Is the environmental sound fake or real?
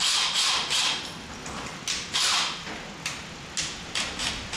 real